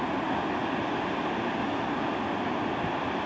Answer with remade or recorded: recorded